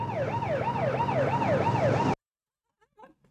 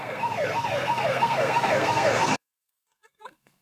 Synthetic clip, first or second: second